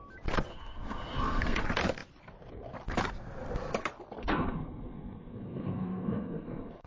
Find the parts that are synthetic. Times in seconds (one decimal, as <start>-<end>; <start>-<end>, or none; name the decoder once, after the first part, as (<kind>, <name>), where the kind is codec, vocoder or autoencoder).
0.5-1.6 (codec, SNAC); 4.2-6.9